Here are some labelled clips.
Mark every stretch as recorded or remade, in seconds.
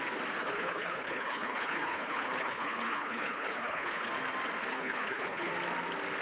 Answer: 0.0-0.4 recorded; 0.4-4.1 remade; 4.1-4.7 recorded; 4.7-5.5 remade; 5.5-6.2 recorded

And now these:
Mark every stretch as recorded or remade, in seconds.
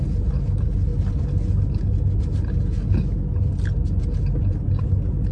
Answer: 0.0-5.3 recorded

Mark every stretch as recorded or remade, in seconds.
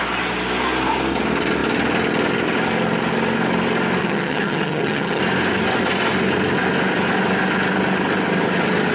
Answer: 0.0-4.0 recorded; 4.0-5.2 remade; 5.2-8.9 recorded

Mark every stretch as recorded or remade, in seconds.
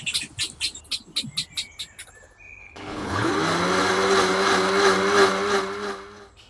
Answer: 0.0-2.6 recorded; 2.6-3.3 remade; 3.3-6.5 recorded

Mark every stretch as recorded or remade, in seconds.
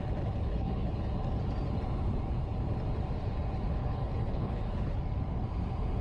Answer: 0.0-0.5 recorded; 0.5-1.0 remade; 1.0-3.8 recorded; 3.8-5.0 remade; 5.0-6.0 recorded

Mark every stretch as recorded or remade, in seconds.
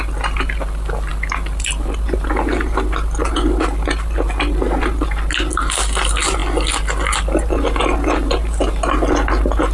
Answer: 0.0-9.7 recorded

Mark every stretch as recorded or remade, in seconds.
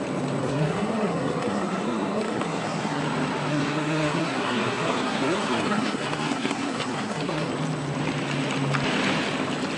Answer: 0.0-0.4 recorded; 0.4-3.0 remade; 3.0-3.5 recorded; 3.5-7.5 remade; 7.5-9.8 recorded